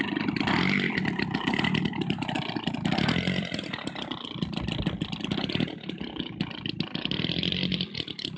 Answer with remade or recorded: recorded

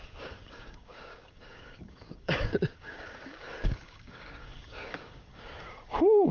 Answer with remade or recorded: remade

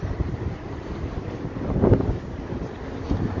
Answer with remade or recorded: recorded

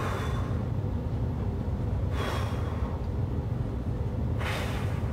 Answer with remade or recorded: recorded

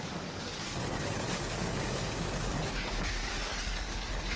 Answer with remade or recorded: remade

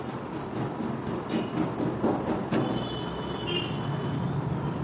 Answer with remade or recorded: recorded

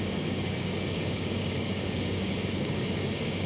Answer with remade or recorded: remade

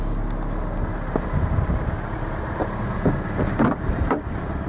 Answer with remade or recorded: recorded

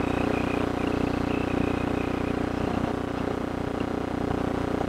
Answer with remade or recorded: recorded